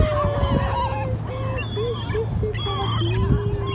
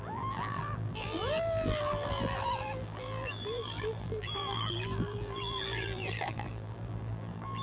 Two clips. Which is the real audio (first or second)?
first